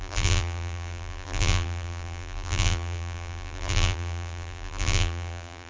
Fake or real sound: fake